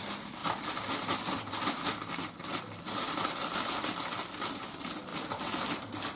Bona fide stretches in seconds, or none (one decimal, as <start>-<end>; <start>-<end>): 0.0-0.4; 1.6-6.2